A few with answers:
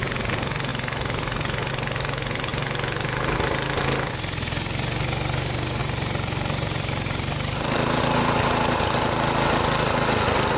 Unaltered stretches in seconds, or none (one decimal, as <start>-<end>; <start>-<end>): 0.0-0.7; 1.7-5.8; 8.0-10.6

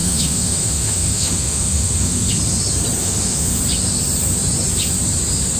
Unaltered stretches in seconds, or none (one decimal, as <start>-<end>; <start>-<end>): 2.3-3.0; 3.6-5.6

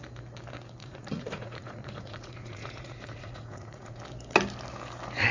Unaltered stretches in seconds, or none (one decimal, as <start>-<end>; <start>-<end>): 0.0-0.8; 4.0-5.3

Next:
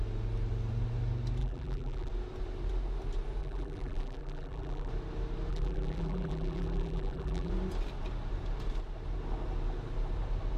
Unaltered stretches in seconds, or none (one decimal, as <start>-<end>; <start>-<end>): 0.0-1.4; 2.1-3.4; 4.9-5.5; 7.5-10.6

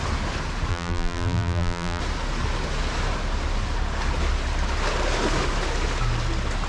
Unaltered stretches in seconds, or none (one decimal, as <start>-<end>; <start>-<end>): 0.0-0.7; 2.0-6.7

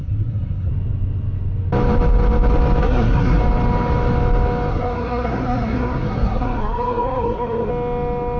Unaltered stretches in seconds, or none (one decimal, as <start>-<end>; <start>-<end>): 0.7-2.8; 3.4-4.7; 7.7-8.4